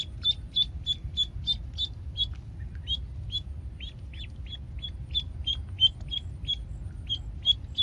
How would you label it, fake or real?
real